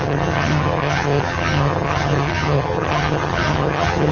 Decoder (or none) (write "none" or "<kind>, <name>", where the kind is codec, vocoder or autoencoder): vocoder, HiFi-GAN